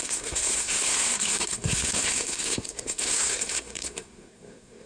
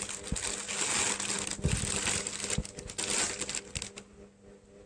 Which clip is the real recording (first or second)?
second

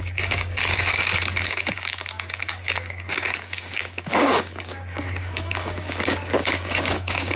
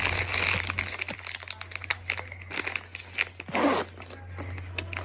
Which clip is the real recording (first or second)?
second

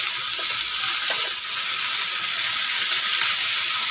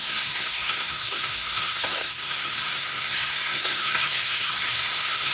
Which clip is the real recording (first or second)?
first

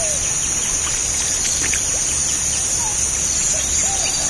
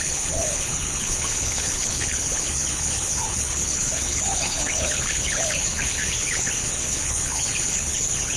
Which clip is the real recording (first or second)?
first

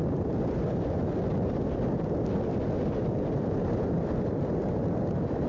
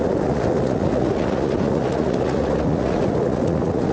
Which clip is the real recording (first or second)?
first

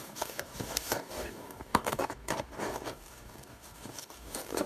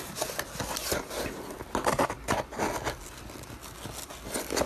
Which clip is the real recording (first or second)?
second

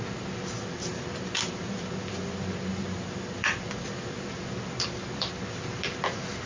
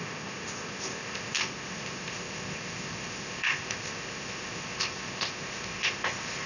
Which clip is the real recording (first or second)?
first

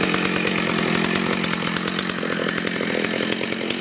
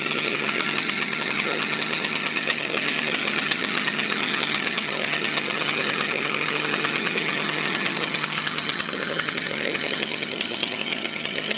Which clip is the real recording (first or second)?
first